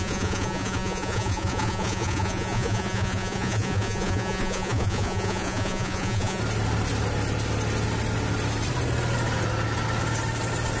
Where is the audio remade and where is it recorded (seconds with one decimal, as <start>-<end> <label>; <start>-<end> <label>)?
0.0-6.4 remade; 6.4-10.8 recorded